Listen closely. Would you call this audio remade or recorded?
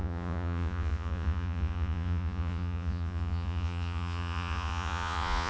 remade